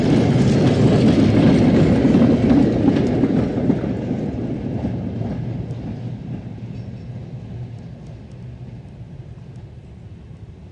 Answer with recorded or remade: recorded